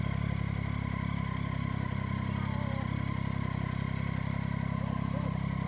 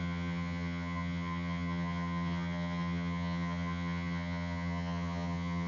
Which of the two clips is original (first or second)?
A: first